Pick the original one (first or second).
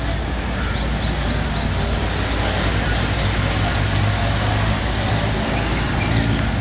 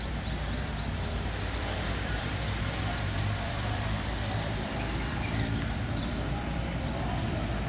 first